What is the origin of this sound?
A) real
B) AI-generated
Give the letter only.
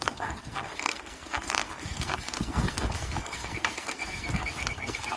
B